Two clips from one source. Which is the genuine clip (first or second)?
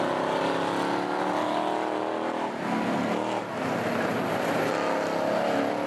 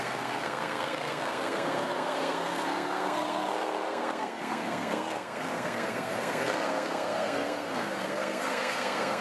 first